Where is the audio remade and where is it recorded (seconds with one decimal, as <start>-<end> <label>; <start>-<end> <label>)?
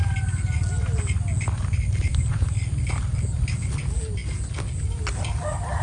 0.0-5.8 recorded